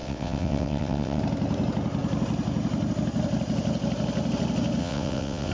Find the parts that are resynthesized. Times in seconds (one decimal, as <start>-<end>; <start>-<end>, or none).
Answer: 0.0-1.2; 4.8-5.5